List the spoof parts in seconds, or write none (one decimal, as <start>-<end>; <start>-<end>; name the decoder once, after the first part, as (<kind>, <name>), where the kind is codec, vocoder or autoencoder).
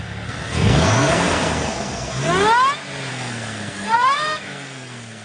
0.0-2.3 (codec, SNAC); 3.1-5.2